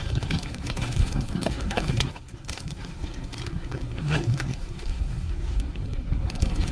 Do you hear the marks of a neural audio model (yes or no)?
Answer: yes